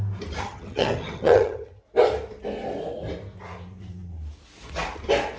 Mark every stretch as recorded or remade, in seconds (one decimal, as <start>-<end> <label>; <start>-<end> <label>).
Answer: 0.0-0.4 recorded; 0.4-1.8 remade; 1.8-5.4 recorded